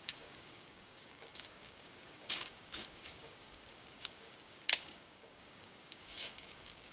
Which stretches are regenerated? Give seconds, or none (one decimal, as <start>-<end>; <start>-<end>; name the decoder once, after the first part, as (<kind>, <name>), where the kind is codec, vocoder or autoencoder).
0.0-6.9 (codec, DAC)